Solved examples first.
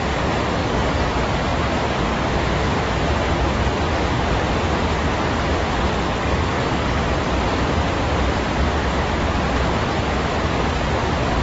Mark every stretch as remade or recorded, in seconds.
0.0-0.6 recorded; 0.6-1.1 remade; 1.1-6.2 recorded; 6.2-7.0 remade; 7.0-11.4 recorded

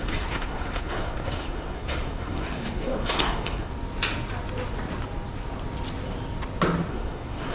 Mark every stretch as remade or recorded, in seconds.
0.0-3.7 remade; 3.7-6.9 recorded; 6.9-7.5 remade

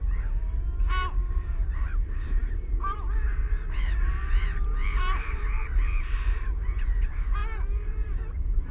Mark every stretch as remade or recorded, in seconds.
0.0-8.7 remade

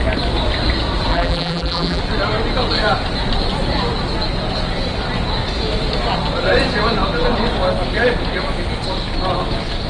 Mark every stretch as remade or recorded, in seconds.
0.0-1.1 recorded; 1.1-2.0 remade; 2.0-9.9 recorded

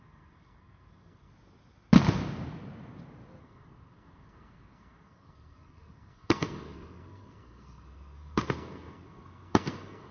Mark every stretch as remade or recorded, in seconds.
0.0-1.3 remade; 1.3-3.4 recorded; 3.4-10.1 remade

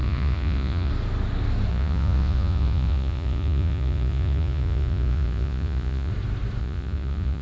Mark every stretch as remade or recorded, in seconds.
0.0-0.9 remade; 0.9-1.7 recorded; 1.7-6.1 remade; 6.1-6.6 recorded; 6.6-7.4 remade

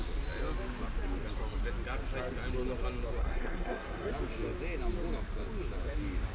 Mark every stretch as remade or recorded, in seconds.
0.0-3.2 recorded; 3.2-4.1 remade; 4.1-6.3 recorded